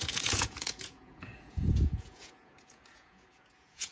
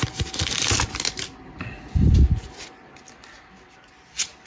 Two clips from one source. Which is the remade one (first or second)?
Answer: first